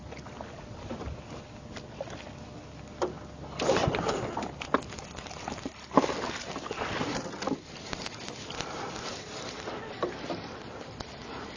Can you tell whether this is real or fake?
real